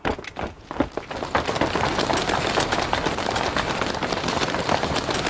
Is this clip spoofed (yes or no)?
no